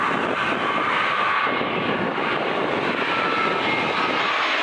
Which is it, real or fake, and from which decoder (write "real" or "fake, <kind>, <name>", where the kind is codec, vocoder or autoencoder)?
real